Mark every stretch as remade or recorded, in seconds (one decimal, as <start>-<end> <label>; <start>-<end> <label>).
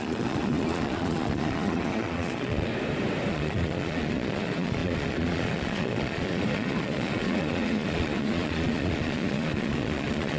0.0-2.7 remade; 2.7-3.3 recorded; 3.3-10.4 remade